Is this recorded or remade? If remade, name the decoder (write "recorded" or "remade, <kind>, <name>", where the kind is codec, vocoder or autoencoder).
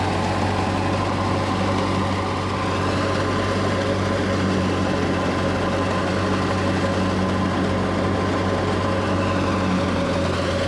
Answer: recorded